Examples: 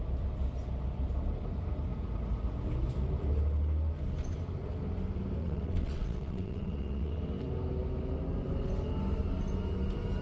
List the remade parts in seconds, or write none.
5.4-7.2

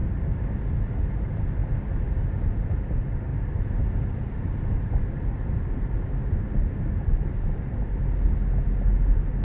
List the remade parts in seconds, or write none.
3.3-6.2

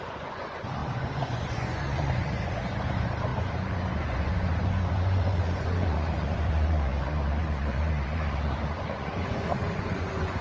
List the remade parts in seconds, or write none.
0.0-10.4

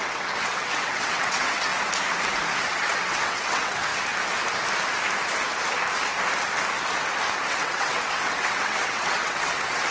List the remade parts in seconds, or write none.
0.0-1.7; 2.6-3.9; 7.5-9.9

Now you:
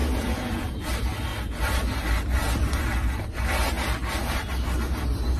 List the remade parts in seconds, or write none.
0.0-0.8

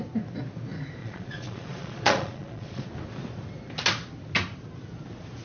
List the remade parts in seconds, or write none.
1.0-2.9